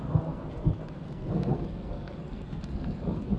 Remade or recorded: remade